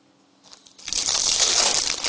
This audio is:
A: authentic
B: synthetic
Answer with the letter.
A